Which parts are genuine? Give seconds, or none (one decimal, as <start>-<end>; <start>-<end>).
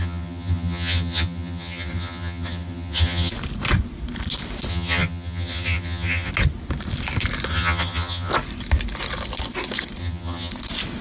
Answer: 3.3-4.7; 6.3-7.5; 8.3-10.0; 10.5-11.0